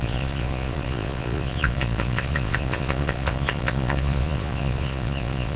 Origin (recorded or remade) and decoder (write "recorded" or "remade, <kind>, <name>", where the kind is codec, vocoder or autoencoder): remade, vocoder, Vocos